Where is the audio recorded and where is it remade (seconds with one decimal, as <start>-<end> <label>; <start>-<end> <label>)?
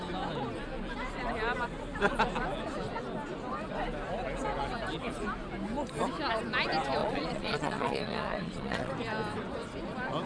0.0-7.0 recorded; 7.0-8.9 remade; 8.9-10.3 recorded